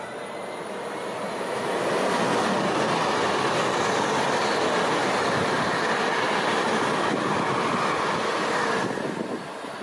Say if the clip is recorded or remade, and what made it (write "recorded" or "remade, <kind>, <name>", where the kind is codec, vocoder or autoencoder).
recorded